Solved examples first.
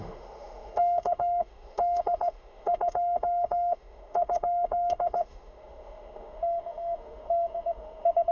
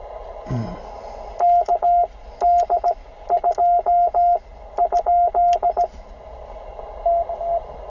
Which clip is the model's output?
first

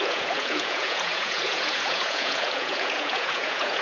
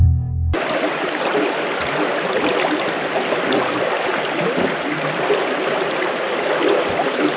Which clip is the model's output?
first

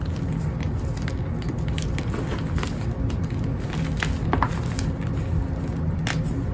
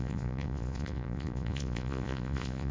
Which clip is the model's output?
second